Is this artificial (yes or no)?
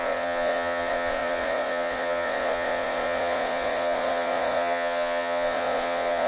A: yes